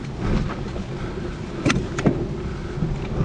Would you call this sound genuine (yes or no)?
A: yes